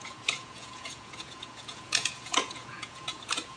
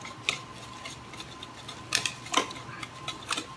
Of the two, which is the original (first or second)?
second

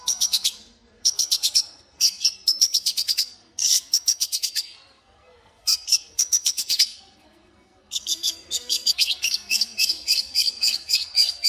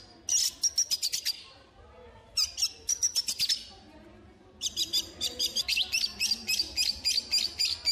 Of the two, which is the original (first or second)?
second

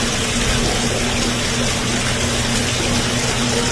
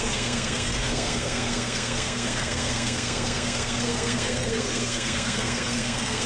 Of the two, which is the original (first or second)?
first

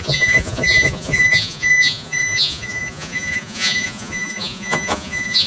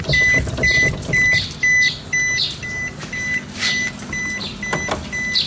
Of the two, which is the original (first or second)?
second